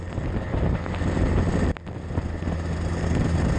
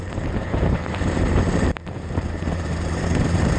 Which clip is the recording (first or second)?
first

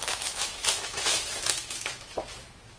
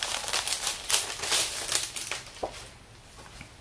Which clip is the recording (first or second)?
second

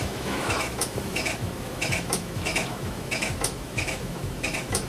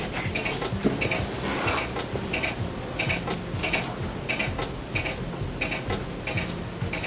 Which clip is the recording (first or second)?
second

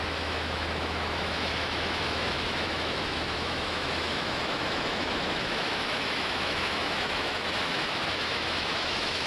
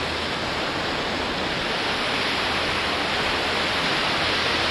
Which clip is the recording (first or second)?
second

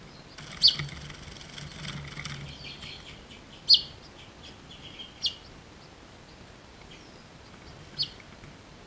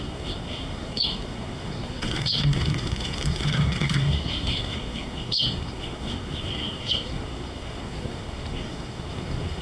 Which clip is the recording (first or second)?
first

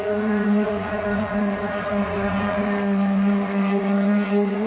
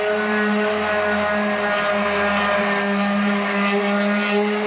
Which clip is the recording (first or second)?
second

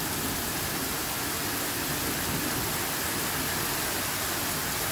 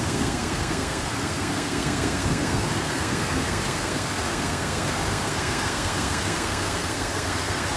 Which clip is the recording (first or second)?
first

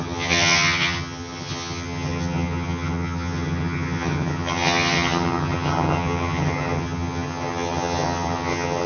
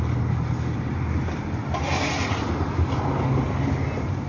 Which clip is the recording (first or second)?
second